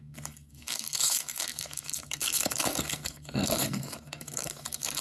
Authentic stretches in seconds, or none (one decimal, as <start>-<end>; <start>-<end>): none